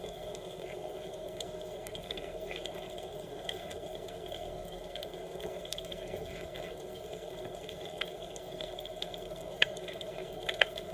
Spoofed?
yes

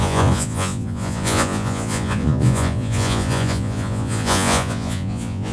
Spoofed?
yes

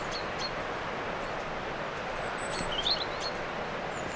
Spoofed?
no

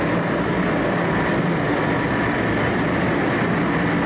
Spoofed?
no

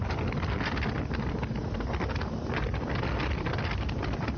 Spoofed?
no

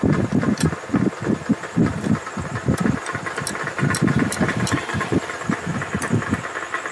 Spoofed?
no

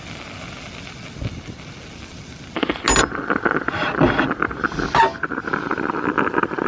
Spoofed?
no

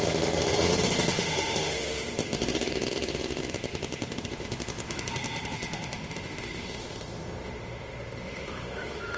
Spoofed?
yes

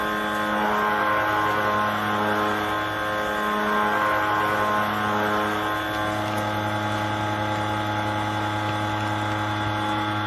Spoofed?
no